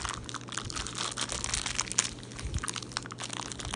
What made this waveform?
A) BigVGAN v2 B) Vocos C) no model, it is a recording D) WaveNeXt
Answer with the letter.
C